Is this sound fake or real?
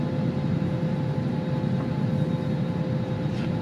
real